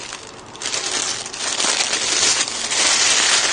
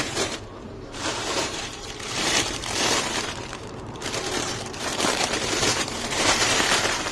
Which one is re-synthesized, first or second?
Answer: second